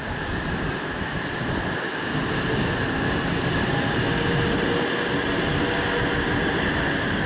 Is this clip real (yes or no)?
yes